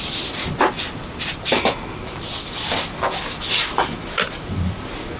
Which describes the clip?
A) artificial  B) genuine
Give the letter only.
B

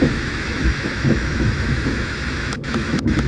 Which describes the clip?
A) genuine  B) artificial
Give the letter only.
B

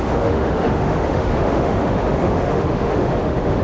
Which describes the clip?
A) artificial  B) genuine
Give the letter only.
A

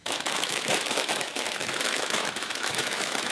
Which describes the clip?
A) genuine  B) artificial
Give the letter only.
B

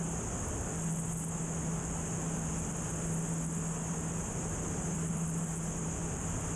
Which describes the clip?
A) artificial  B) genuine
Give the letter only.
B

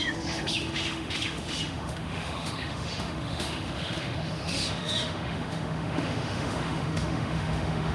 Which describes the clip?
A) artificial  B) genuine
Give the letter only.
A